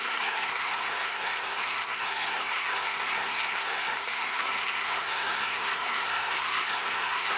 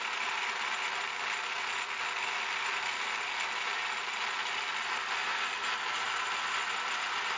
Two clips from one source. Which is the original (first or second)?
second